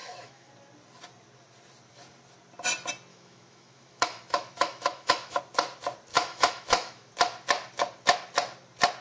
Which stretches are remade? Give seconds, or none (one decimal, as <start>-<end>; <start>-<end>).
0.0-0.5; 3.1-5.4; 6.1-7.1